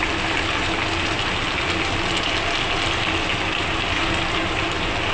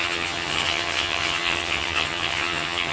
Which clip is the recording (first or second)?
first